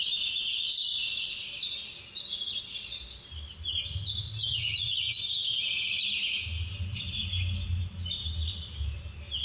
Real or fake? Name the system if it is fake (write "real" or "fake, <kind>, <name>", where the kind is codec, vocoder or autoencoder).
real